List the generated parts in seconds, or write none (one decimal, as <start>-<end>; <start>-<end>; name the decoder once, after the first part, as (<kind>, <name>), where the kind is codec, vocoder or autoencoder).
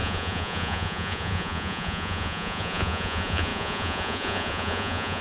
0.0-5.2 (vocoder, Vocos)